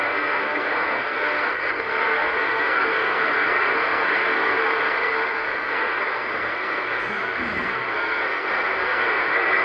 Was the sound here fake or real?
fake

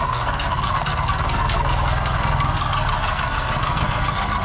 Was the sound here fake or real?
fake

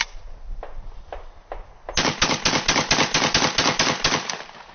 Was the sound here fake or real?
real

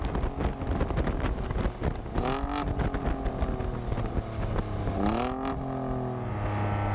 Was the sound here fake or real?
real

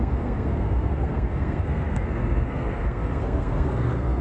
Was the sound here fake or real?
fake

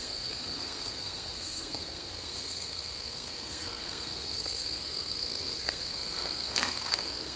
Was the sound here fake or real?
fake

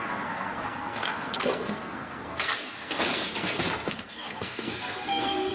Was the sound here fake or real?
fake